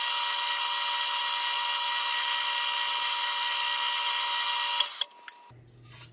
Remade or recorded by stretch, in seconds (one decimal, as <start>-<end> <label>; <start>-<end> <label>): 0.0-6.1 recorded